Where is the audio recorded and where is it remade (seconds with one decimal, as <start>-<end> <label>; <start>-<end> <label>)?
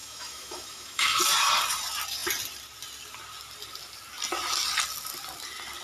0.0-1.2 remade; 1.2-5.8 recorded